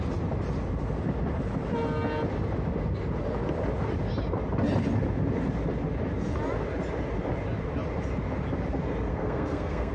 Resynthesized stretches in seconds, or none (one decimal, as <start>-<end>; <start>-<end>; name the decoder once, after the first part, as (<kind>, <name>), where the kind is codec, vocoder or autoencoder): 9.1-9.9 (codec, SNAC)